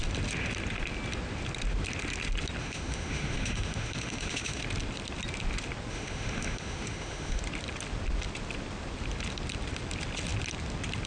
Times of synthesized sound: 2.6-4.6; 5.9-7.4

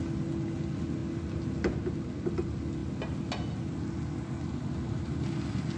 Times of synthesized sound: none

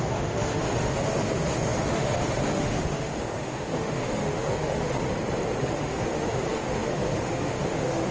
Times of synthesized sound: 0.0-5.0; 5.6-8.1